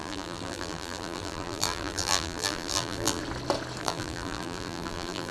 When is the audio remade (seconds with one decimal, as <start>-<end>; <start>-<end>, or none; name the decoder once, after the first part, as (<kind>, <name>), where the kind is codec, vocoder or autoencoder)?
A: 0.0-3.2 (vocoder, BigVGAN v2); 3.8-5.3

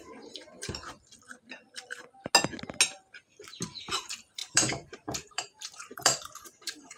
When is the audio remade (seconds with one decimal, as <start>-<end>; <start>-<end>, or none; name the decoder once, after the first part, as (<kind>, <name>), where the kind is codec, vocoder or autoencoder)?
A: 0.0-0.8 (vocoder, BigVGAN v2); 3.8-7.0

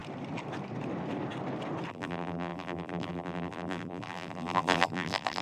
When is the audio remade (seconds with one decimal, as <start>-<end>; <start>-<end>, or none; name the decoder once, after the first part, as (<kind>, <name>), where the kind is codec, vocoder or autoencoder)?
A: 1.9-5.4 (vocoder, BigVGAN v2)

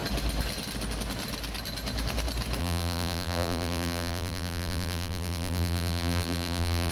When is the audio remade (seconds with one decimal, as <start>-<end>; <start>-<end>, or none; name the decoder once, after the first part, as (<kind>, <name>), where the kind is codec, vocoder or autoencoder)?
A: 2.6-6.9 (vocoder, BigVGAN v2)

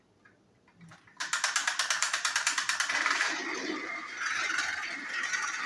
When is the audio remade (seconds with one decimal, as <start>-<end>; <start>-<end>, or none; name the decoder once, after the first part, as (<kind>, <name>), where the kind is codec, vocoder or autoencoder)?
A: 2.0-5.7 (vocoder, BigVGAN v2)